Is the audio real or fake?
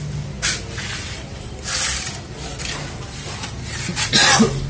real